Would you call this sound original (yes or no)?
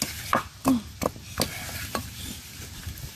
yes